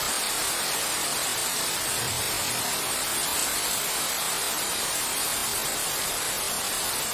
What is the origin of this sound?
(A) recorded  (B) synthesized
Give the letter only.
A